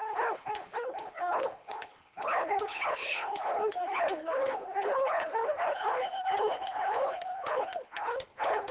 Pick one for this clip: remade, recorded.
remade